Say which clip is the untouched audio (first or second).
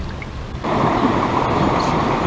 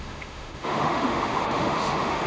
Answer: first